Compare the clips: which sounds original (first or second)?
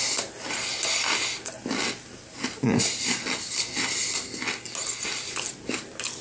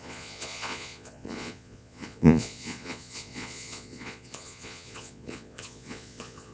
first